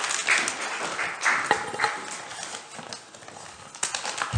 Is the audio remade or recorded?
recorded